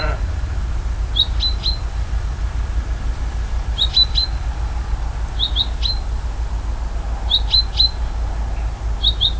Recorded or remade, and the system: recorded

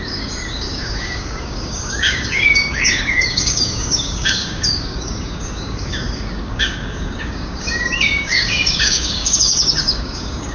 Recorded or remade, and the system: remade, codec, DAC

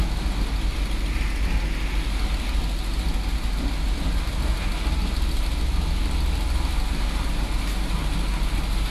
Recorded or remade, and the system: recorded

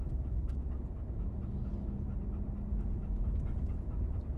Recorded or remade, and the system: recorded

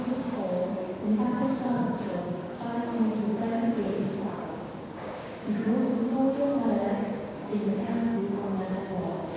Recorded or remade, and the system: remade, codec, DAC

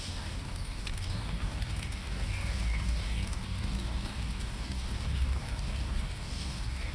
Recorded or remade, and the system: remade, codec, DAC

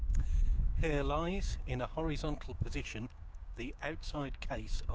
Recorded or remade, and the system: remade, codec, DAC